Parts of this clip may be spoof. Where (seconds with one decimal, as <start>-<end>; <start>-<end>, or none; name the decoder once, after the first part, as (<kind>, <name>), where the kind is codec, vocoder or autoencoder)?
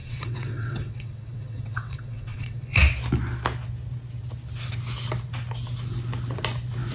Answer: 0.0-2.8 (vocoder, WaveNeXt)